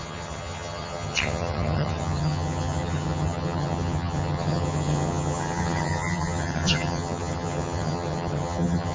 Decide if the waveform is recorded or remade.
remade